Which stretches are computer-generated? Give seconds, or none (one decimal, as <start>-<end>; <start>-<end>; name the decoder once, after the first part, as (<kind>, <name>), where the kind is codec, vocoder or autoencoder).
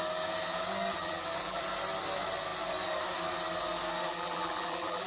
1.0-1.6 (vocoder, BigVGAN v2); 4.1-5.1